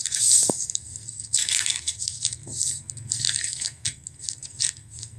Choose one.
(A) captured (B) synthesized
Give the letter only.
B